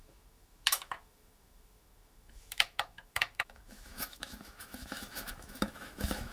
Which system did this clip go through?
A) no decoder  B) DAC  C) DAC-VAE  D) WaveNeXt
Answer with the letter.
C